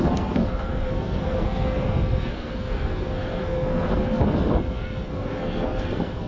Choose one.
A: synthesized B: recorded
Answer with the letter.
A